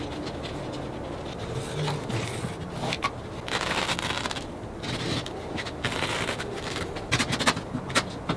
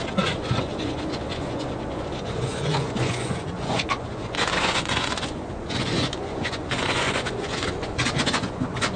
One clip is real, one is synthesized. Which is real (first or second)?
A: first